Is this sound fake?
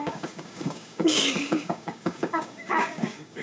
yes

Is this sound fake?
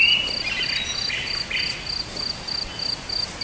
no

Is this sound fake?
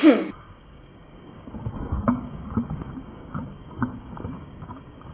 yes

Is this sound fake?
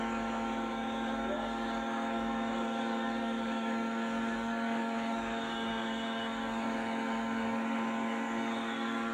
yes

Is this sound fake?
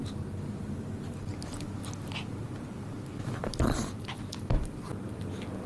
no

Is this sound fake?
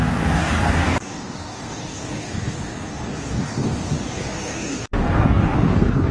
yes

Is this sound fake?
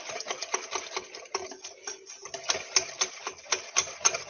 no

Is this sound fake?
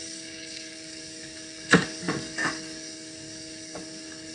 yes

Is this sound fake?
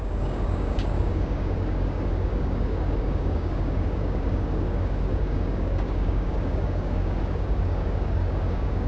yes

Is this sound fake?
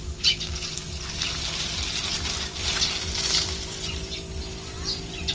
no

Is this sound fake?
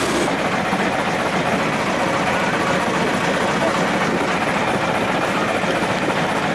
no